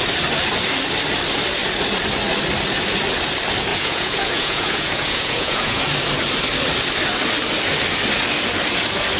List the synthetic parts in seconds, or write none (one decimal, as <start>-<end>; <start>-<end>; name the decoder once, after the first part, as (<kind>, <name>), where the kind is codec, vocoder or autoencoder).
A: 3.7-5.8 (vocoder, Vocos)